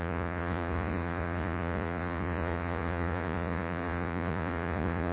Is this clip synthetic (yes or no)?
yes